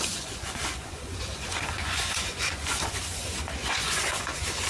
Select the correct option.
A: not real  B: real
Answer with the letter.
A